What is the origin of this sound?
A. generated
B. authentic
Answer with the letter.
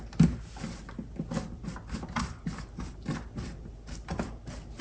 B